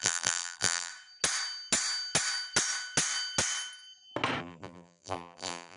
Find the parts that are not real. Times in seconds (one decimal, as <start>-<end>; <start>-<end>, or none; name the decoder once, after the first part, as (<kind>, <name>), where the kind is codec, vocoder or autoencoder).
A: 0.0-0.9 (vocoder, BigVGAN v2); 4.4-5.8

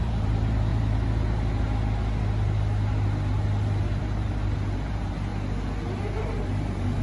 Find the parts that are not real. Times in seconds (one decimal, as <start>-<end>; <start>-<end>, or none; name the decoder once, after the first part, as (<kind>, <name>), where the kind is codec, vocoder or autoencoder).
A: 0.0-0.7 (vocoder, BigVGAN v2); 4.0-5.3; 6.2-7.0

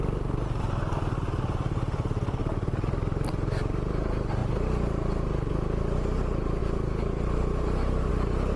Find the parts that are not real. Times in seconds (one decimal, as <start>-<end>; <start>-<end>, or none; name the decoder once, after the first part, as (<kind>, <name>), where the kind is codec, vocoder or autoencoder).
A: 2.4-3.3 (vocoder, BigVGAN v2); 6.6-8.1

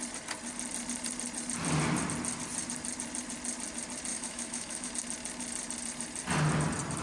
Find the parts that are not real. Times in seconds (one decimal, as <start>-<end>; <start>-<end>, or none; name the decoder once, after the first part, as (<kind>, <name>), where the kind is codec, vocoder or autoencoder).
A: 4.1-4.9 (autoencoder, DAC-VAE)

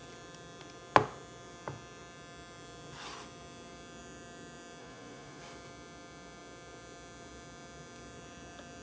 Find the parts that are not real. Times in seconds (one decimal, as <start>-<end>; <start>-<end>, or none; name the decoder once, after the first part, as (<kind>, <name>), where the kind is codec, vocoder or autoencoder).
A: 4.8-5.4 (vocoder, Vocos)

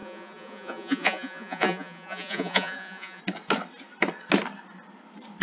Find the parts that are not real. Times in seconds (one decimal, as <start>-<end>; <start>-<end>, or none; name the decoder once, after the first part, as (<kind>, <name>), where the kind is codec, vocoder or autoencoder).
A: 0.0-3.2 (vocoder, Vocos)

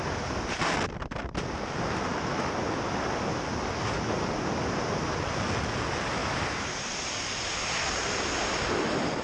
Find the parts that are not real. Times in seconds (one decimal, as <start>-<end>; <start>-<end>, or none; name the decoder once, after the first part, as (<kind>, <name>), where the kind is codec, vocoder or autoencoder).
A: none